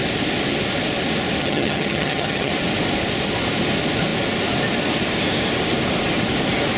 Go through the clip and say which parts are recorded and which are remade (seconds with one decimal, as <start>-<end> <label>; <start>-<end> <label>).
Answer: 0.0-1.4 recorded; 1.4-2.5 remade; 2.5-6.8 recorded